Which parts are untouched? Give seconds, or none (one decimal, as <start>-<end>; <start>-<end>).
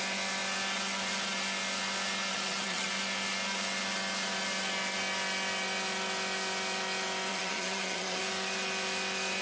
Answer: 0.0-2.3; 2.9-7.3; 8.2-9.4